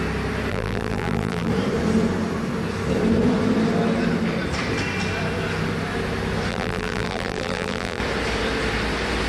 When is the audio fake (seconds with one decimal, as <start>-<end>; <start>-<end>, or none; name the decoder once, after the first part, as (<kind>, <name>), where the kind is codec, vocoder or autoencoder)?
0.5-1.5 (vocoder, BigVGAN v2); 6.5-8.0

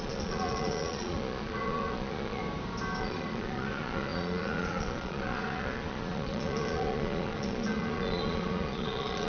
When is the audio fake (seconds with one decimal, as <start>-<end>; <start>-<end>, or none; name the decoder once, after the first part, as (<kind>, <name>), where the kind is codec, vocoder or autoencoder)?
0.0-2.4 (vocoder, Vocos); 3.0-9.3